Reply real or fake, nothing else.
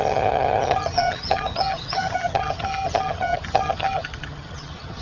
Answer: fake